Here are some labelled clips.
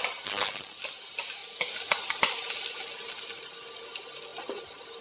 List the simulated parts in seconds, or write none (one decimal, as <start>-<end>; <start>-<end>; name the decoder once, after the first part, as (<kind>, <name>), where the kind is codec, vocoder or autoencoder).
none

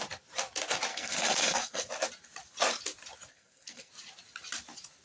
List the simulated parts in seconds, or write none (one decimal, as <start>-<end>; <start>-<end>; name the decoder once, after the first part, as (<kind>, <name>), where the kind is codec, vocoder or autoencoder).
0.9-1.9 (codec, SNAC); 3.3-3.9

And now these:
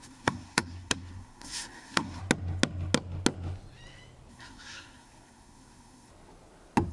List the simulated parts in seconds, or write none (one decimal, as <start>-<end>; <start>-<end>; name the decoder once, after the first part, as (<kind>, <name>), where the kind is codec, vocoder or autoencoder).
0.0-2.2 (codec, SNAC); 4.3-6.1

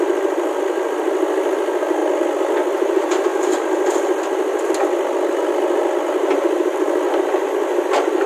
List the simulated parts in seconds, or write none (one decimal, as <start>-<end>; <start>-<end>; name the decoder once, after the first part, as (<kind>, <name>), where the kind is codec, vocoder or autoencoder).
none

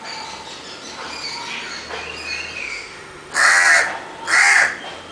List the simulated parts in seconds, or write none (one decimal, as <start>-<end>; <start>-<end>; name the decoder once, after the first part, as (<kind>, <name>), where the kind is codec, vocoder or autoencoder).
2.6-3.3 (autoencoder, DAC-VAE)

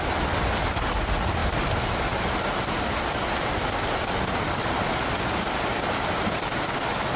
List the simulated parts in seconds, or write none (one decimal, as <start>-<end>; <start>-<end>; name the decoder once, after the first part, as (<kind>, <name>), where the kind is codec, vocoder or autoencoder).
none

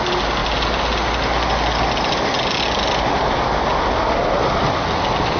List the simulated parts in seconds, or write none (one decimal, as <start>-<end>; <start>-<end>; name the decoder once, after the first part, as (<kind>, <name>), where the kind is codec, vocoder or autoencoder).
none